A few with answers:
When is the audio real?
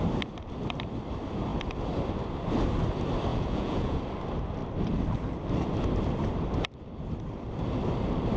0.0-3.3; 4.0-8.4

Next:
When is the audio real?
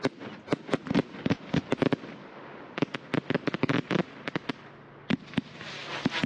0.0-6.3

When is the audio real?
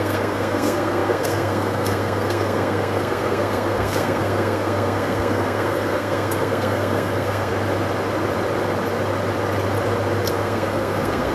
7.5-10.3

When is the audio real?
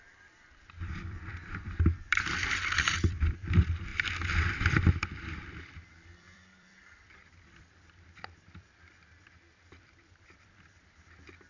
3.9-4.6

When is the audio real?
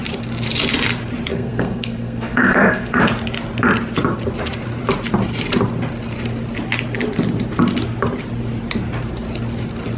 0.0-1.3; 3.0-10.0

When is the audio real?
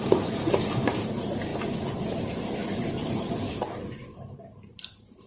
1.5-2.1